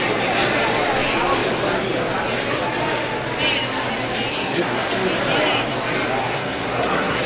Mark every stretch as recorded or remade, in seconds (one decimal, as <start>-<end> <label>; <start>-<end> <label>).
0.0-4.3 recorded; 4.3-4.9 remade; 4.9-6.2 recorded; 6.2-7.3 remade